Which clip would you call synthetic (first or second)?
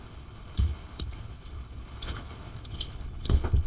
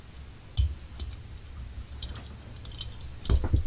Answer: first